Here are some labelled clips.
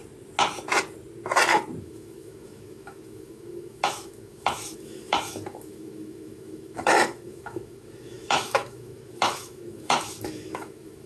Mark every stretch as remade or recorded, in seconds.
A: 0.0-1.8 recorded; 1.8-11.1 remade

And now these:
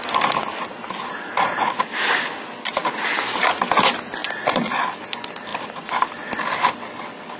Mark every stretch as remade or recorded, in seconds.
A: 0.0-7.4 recorded

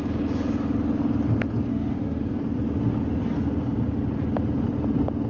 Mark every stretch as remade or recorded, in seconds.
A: 0.0-1.7 recorded; 1.7-2.2 remade; 2.2-5.3 recorded

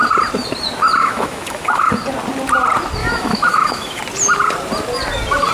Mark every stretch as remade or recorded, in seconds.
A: 0.0-1.0 recorded; 1.0-1.9 remade; 1.9-3.0 recorded; 3.0-4.0 remade; 4.0-5.5 recorded